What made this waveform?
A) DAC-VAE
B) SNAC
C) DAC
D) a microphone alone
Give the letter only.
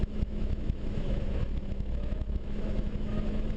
A